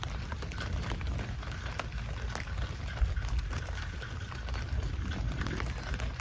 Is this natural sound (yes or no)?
yes